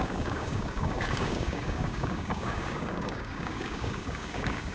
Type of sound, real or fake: fake